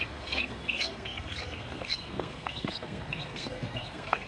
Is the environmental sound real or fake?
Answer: fake